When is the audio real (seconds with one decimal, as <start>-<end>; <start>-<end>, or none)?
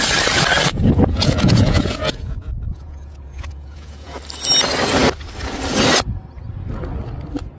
0.0-0.7; 4.2-7.6